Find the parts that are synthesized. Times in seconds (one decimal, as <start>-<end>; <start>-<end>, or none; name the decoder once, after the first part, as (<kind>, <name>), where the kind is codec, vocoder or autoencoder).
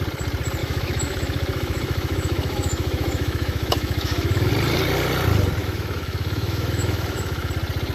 0.6-4.5 (autoencoder, DAC-VAE); 5.6-7.5